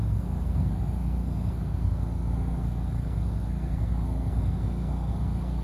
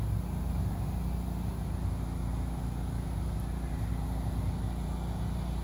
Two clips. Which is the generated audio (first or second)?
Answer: first